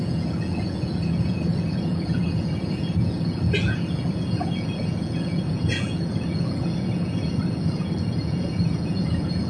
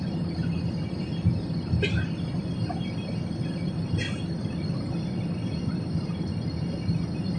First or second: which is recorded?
second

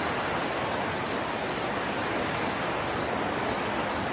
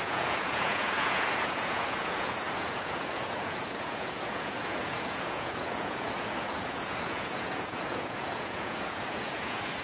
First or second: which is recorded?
first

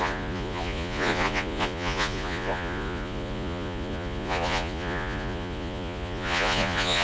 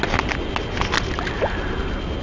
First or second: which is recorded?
second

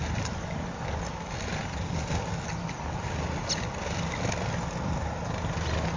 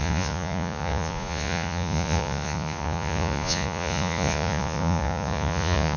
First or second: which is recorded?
first